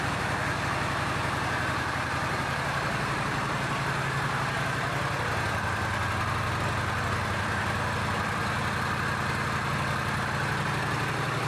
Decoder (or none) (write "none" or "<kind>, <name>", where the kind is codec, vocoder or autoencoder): none